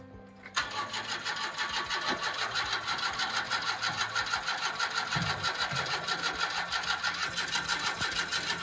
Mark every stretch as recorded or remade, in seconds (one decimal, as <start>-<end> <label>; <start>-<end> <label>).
0.0-8.6 recorded